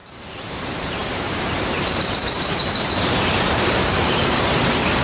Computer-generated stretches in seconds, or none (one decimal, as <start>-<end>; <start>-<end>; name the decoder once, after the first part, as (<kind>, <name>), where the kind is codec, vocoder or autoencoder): 0.0-5.0 (vocoder, BigVGAN v2)